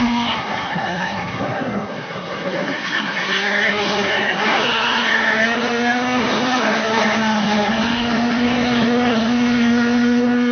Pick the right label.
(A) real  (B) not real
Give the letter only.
B